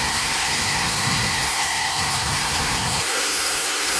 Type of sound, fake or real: fake